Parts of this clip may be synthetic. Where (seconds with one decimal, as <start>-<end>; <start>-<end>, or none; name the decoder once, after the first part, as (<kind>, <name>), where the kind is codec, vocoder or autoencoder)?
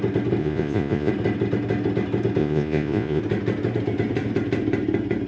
0.4-1.1 (vocoder, Vocos); 2.4-3.2